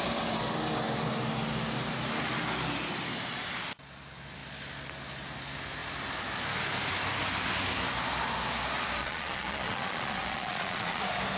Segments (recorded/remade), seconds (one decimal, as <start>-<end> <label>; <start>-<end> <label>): 0.0-9.0 recorded; 9.0-11.0 remade; 11.0-11.4 recorded